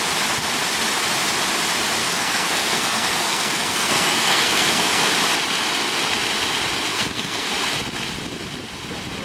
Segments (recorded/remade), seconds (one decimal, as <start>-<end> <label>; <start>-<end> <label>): 0.0-2.0 recorded; 2.0-5.1 remade; 5.1-6.9 recorded; 6.9-7.5 remade; 7.5-9.2 recorded